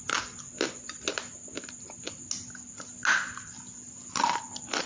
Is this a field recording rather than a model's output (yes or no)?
yes